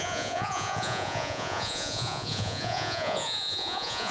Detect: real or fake fake